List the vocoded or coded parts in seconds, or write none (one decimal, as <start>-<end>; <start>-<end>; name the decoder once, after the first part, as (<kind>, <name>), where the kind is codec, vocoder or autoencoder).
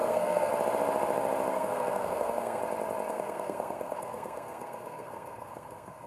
0.0-0.5 (codec, SNAC); 1.5-2.6; 3.1-6.1